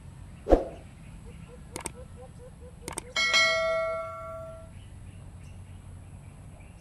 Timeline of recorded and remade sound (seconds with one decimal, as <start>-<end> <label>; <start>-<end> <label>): 0.0-4.0 recorded; 4.0-4.5 remade; 4.5-6.8 recorded